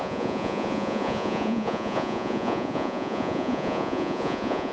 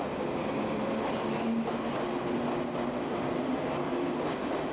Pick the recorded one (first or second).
second